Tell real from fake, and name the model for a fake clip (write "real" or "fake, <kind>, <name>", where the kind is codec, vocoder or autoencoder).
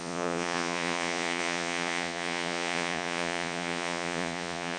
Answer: fake, vocoder, Vocos